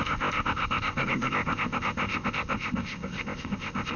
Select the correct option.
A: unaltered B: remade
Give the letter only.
B